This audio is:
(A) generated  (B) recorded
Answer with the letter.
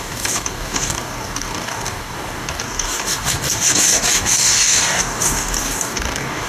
A